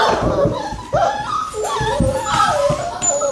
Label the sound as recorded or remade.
recorded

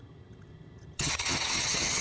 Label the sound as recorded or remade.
remade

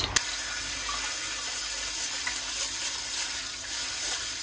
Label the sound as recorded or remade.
recorded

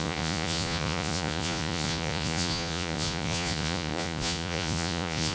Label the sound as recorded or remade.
remade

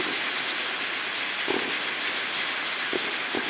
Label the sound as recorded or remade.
recorded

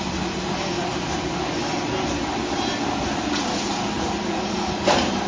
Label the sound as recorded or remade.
recorded